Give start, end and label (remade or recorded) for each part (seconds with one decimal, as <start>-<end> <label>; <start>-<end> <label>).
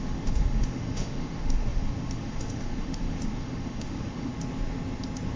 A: 0.0-4.3 remade; 4.3-5.4 recorded